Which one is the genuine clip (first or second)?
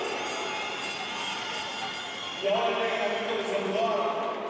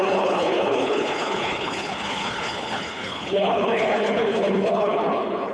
first